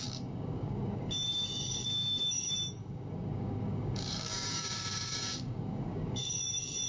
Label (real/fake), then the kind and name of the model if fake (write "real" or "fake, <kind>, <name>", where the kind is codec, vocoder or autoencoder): fake, codec, DAC